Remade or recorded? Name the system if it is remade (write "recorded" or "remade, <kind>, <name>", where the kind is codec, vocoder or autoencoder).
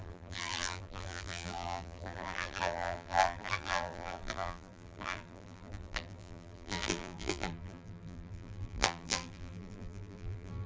remade, vocoder, BigVGAN v2